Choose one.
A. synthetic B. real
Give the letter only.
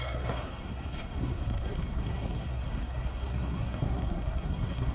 A